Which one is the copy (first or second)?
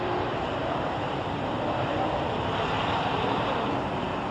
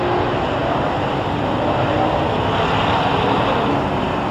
first